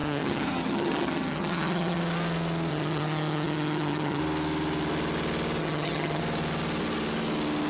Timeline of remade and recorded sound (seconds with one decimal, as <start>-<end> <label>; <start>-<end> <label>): 0.0-2.0 remade; 2.0-2.7 recorded; 2.7-4.2 remade; 4.2-5.6 recorded; 5.6-6.2 remade; 6.2-7.7 recorded